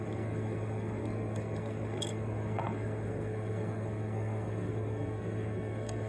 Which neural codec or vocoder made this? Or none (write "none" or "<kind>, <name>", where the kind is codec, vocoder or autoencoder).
codec, SNAC